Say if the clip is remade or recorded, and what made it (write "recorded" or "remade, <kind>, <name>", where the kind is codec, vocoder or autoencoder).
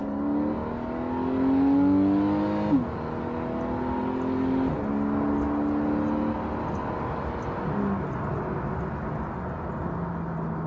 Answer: recorded